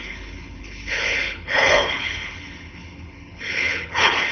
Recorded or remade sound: remade